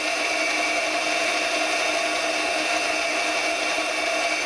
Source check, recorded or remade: recorded